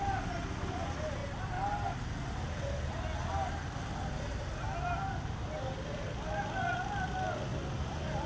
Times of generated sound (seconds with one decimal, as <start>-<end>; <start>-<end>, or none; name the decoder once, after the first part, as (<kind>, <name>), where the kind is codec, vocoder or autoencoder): none